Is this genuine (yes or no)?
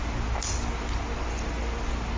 yes